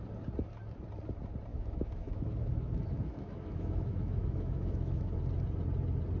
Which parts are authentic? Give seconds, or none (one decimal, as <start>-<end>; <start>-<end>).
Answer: 0.0-1.5; 5.2-6.2